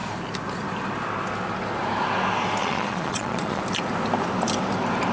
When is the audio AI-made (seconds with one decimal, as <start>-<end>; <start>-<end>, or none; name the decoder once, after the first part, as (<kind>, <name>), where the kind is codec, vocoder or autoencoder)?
2.6-3.6 (vocoder, Vocos)